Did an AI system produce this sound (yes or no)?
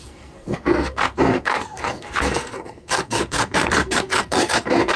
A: yes